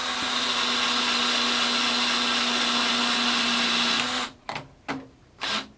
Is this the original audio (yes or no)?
yes